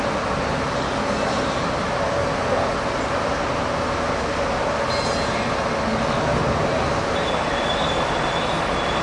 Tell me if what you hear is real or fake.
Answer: real